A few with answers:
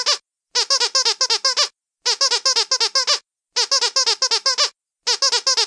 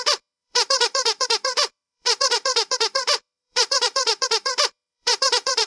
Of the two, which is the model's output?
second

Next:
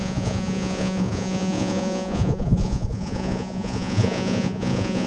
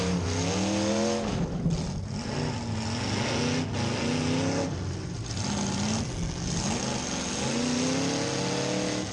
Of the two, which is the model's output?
first